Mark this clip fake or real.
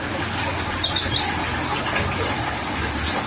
real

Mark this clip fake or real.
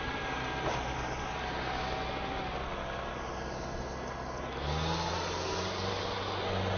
real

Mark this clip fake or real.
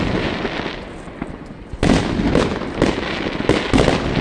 real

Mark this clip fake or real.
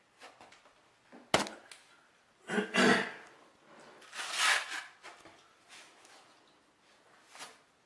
real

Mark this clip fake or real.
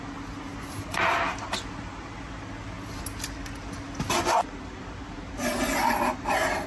real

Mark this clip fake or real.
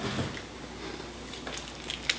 real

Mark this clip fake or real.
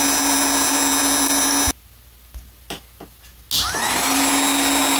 real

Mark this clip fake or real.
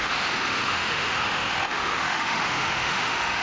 fake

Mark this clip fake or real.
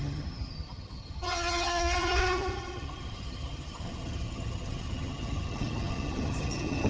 fake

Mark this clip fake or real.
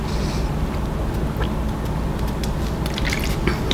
real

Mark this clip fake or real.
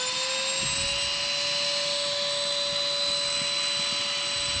real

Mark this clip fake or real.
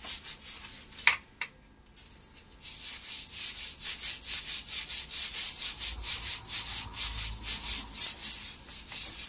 real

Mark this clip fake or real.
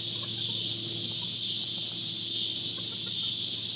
real